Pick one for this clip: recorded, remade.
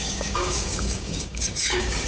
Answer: remade